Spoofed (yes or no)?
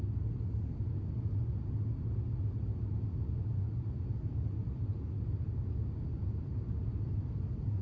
no